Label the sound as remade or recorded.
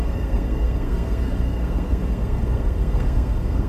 remade